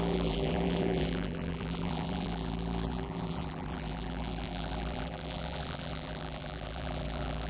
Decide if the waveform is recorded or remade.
remade